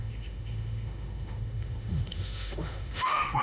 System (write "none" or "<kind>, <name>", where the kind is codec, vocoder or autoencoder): autoencoder, DAC-VAE